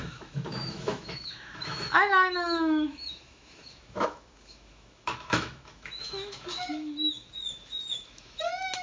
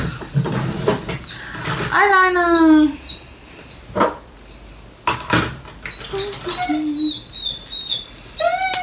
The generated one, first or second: first